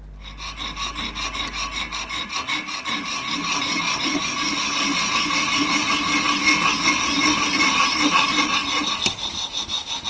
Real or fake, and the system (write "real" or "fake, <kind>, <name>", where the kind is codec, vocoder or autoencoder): real